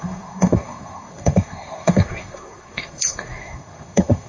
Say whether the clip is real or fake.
fake